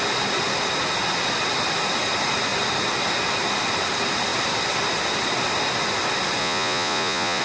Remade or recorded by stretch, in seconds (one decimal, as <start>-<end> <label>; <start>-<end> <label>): 0.0-6.4 recorded; 6.4-7.4 remade